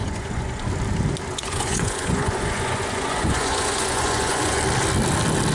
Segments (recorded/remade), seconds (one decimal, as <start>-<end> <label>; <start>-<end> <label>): 0.0-0.7 remade; 0.7-1.3 recorded; 1.3-4.6 remade; 4.6-5.5 recorded

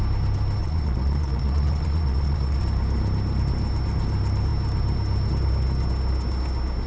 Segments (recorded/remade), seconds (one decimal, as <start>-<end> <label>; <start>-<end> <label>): 0.0-0.6 recorded; 0.6-2.6 remade; 2.6-6.9 recorded